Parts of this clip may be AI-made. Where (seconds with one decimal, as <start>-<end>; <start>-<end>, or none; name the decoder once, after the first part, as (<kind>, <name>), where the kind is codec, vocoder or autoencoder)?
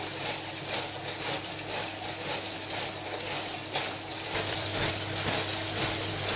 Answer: 4.1-4.9 (vocoder, BigVGAN v2)